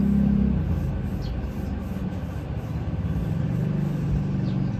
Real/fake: real